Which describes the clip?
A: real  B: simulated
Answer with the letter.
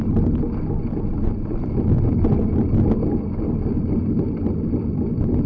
A